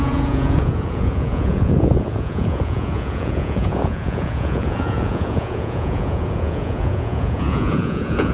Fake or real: fake